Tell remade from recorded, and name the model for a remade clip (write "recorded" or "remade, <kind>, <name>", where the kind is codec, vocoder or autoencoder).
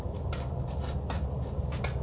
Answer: recorded